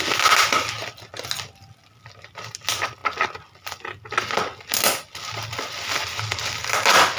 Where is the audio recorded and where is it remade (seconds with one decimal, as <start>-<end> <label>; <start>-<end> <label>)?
0.0-7.2 recorded